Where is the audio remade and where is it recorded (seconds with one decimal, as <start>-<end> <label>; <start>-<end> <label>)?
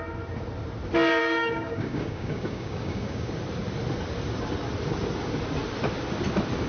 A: 0.0-1.2 recorded; 1.2-3.3 remade; 3.3-6.7 recorded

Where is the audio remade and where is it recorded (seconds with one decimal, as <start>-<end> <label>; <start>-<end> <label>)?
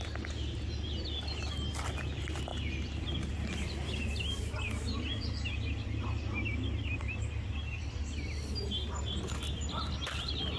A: 0.0-10.6 recorded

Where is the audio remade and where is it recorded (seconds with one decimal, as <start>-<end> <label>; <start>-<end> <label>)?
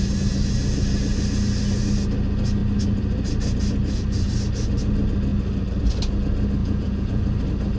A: 0.0-6.6 recorded; 6.6-7.2 remade; 7.2-7.8 recorded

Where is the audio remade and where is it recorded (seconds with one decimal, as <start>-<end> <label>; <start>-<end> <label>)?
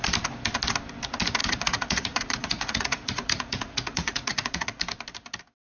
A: 0.0-1.4 recorded; 1.4-4.8 remade; 4.8-5.7 recorded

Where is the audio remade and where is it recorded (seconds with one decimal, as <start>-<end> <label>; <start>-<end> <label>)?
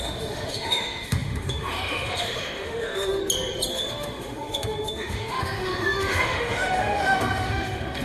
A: 0.0-3.2 remade; 3.2-3.7 recorded; 3.7-8.0 remade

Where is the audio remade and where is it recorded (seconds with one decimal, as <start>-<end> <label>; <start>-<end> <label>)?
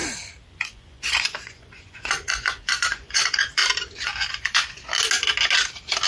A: 0.0-0.5 recorded; 0.5-3.6 remade; 3.6-4.3 recorded; 4.3-4.9 remade; 4.9-6.1 recorded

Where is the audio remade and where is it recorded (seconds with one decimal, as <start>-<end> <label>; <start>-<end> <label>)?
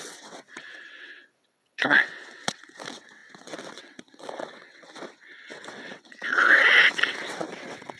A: 0.0-8.0 remade